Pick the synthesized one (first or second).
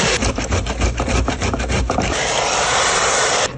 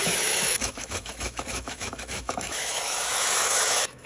second